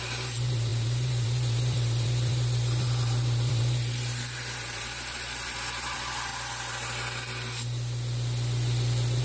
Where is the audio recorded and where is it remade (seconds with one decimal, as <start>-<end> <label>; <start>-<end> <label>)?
0.0-6.3 remade; 6.3-9.2 recorded